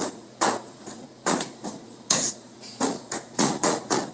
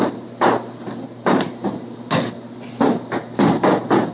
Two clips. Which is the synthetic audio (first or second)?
first